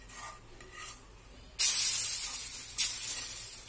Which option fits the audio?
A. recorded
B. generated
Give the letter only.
A